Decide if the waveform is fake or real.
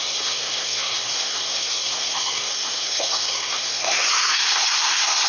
fake